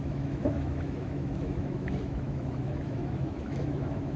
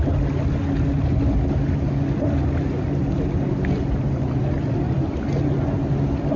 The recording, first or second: second